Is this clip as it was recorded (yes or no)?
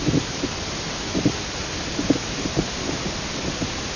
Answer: yes